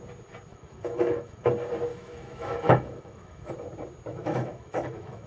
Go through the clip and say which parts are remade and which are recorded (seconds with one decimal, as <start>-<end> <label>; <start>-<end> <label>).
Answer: 0.0-0.5 recorded; 0.5-1.5 remade; 1.5-1.9 recorded; 1.9-3.5 remade; 3.5-4.1 recorded; 4.1-5.3 remade

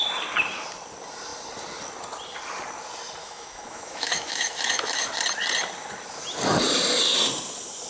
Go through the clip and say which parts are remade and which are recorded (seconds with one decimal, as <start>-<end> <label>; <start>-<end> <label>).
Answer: 0.0-3.2 recorded; 3.2-5.1 remade; 5.1-7.9 recorded

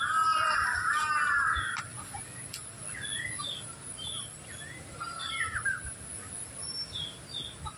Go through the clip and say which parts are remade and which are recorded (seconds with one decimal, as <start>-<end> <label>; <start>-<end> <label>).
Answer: 0.0-7.8 recorded

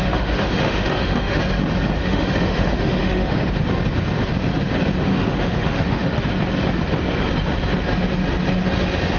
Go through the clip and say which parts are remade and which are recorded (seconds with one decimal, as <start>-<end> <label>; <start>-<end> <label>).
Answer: 0.0-1.4 remade; 1.4-2.0 recorded; 2.0-3.5 remade; 3.5-5.1 recorded; 5.1-6.2 remade; 6.2-9.2 recorded